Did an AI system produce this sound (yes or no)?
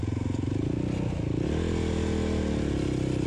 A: no